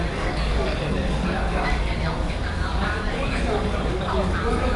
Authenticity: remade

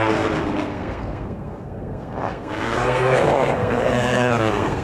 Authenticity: remade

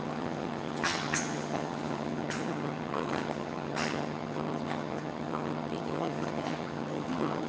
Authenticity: remade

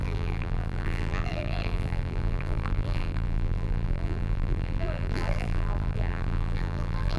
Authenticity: remade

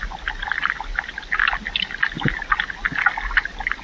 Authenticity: recorded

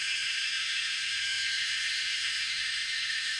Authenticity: remade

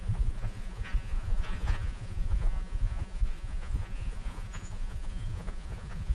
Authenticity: remade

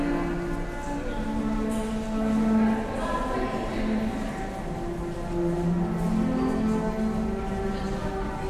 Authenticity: recorded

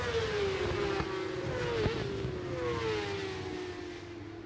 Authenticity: recorded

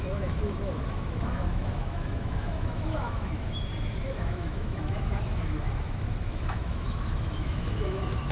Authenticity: remade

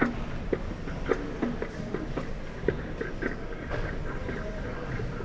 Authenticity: recorded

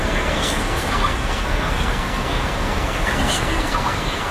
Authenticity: remade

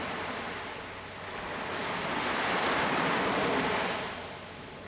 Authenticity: recorded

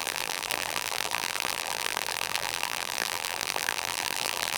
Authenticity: remade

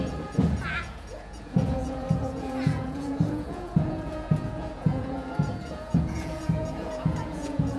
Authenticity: remade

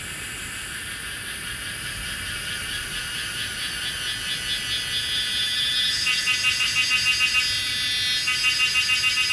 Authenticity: recorded